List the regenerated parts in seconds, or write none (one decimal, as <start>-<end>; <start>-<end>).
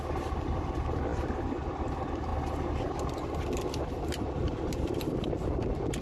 none